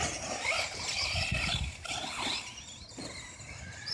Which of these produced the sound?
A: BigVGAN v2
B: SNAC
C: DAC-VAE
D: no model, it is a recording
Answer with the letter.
D